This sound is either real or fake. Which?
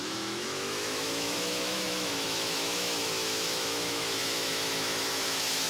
fake